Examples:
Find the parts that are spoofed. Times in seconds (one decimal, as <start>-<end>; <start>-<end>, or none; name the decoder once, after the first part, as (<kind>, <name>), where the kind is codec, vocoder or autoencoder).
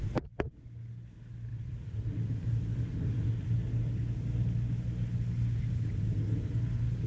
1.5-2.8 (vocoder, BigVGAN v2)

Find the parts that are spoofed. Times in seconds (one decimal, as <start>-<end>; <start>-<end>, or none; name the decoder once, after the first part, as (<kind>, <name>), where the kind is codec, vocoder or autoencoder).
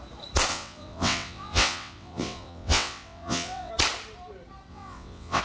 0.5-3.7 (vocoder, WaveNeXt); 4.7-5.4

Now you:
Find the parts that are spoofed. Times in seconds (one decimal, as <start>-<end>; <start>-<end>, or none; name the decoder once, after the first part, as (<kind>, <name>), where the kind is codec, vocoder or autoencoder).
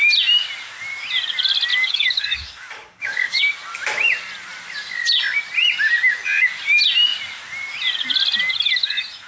1.7-3.4 (codec, DAC)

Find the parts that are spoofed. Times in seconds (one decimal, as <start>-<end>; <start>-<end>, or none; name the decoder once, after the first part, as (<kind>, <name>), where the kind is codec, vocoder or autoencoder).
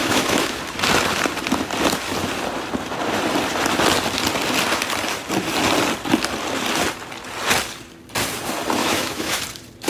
0.0-0.6 (autoencoder, DAC-VAE); 8.8-9.4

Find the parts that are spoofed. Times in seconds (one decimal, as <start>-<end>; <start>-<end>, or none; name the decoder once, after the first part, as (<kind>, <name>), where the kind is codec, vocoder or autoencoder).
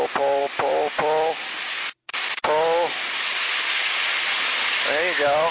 none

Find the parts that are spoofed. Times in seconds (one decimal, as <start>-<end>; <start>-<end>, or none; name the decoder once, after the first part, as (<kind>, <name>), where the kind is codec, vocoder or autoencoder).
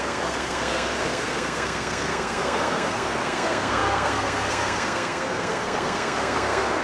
0.0-6.8 (codec, SNAC)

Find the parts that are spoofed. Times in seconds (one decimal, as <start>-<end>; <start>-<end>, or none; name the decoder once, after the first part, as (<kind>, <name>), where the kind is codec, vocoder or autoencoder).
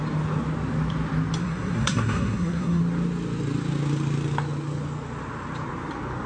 1.4-2.8 (codec, SNAC)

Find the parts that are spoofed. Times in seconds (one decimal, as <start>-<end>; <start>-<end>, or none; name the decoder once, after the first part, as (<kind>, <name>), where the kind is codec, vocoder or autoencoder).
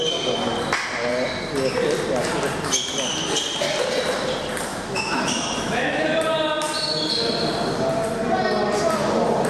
4.7-6.2 (autoencoder, DAC-VAE)